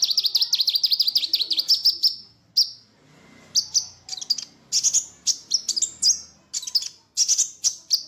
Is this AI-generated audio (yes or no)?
no